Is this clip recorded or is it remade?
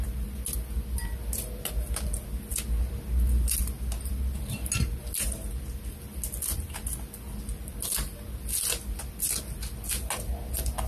recorded